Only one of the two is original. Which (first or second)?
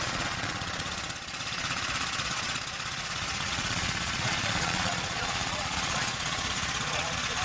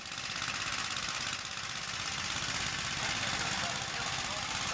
second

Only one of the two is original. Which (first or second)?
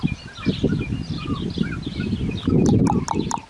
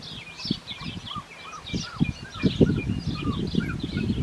second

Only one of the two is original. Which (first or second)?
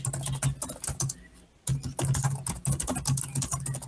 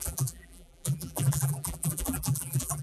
first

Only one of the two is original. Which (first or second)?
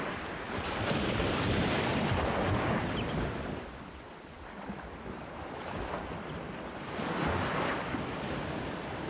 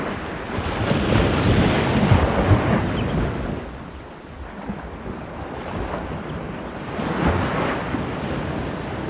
second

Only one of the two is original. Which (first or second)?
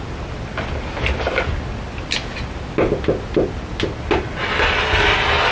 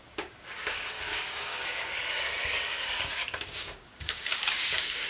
first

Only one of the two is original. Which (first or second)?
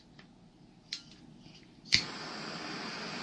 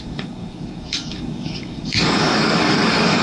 first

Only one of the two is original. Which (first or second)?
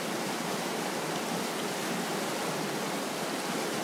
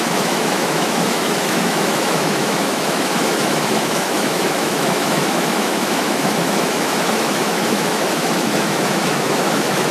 first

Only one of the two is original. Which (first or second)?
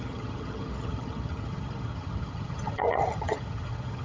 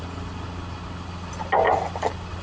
second